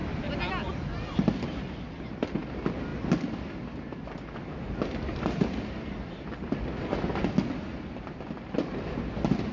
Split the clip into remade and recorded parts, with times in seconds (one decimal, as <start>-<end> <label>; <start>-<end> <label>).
0.0-9.5 recorded